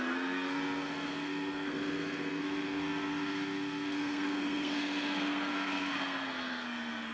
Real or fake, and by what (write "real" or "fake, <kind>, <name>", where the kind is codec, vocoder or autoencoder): fake, codec, SNAC